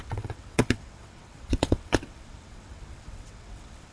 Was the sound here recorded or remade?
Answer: remade